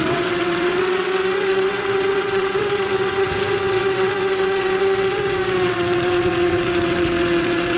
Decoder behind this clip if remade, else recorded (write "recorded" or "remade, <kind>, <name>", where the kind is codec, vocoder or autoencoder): remade, vocoder, WaveNeXt